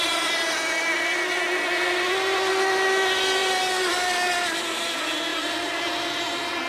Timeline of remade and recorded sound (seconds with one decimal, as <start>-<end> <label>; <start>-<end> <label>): 0.0-6.7 recorded